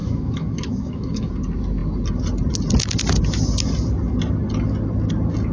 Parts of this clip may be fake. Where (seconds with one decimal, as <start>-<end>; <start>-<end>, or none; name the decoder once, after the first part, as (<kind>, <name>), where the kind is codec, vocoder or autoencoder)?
0.0-1.3 (autoencoder, DAC-VAE)